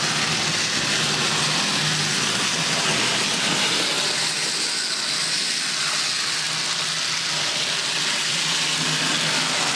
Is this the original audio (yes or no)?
yes